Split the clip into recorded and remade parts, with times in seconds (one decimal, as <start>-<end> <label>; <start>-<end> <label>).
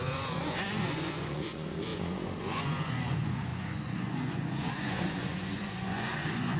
0.0-6.6 remade